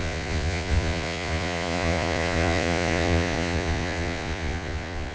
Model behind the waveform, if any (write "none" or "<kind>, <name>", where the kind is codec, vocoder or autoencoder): vocoder, Vocos